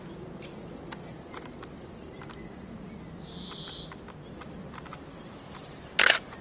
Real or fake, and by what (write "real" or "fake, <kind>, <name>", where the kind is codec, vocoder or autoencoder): real